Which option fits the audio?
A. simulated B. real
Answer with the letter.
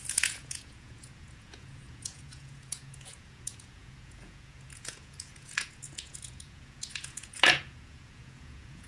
A